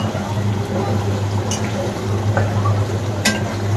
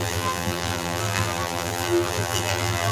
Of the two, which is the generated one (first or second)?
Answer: second